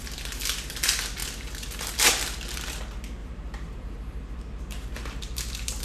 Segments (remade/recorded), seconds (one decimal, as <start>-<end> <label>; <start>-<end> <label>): 0.0-3.2 recorded; 3.2-5.8 remade